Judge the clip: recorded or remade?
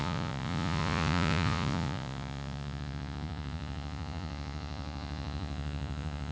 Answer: remade